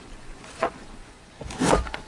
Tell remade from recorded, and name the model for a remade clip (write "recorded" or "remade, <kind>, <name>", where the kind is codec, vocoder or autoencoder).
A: remade, vocoder, Vocos